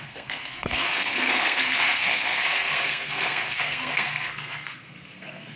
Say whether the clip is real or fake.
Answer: fake